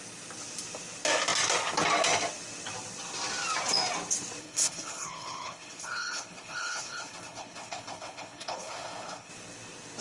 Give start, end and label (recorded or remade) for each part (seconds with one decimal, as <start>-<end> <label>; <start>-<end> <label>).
0.0-4.4 recorded; 4.4-9.3 remade; 9.3-10.0 recorded